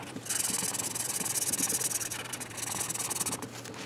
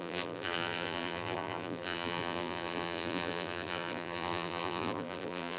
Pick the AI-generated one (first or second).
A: second